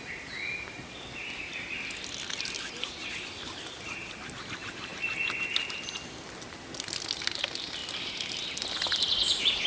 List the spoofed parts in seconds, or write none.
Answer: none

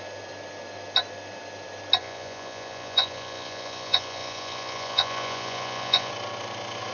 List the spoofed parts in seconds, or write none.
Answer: 2.0-6.1 (vocoder, Vocos)

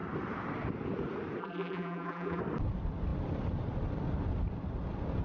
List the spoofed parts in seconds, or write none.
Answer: 1.4-2.4 (vocoder, BigVGAN v2)

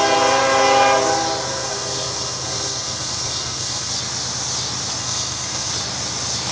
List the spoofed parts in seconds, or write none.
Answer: 1.5-3.9 (codec, SNAC); 5.0-5.7

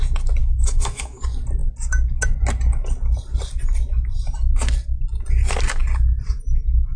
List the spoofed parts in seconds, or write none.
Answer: 0.4-1.2 (autoencoder, DAC-VAE)

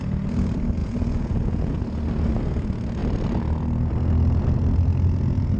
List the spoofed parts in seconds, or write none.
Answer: 0.8-1.8 (vocoder, Vocos)